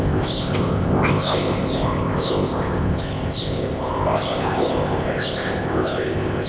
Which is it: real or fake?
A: fake